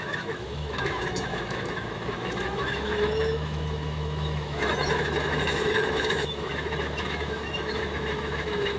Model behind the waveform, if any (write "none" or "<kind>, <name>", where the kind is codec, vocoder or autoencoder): autoencoder, DAC-VAE